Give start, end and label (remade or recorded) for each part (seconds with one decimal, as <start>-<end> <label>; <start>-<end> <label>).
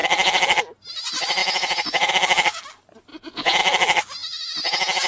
0.0-1.4 recorded; 1.4-2.1 remade; 2.1-3.1 recorded; 3.1-3.6 remade; 3.6-4.2 recorded; 4.2-5.1 remade